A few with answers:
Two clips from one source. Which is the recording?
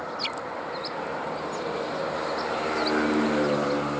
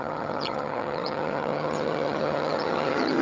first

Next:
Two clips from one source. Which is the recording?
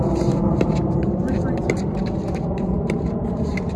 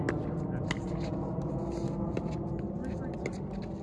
second